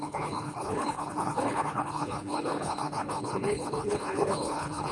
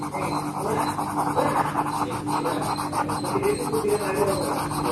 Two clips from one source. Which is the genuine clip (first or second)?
second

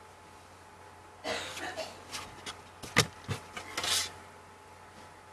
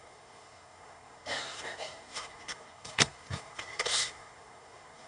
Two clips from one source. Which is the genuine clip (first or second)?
first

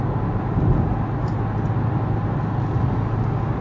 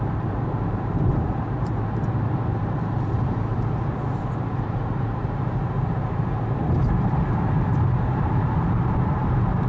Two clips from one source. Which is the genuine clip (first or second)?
first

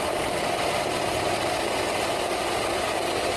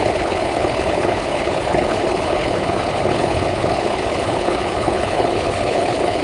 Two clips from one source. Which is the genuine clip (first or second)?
first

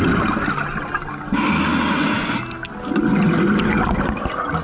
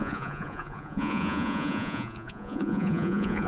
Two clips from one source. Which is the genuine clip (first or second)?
first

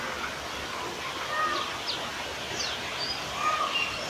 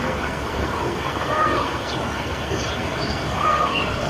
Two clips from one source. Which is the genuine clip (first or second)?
first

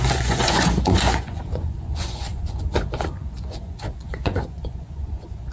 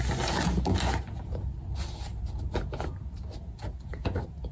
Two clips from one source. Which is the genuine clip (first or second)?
second